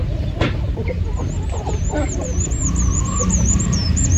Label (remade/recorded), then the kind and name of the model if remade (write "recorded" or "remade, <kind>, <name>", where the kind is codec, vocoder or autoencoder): remade, vocoder, BigVGAN v2